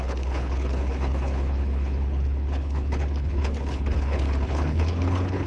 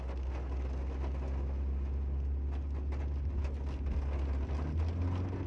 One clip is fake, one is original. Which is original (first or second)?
second